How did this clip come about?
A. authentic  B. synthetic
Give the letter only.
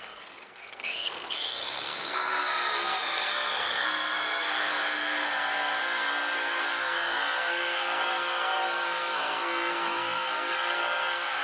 B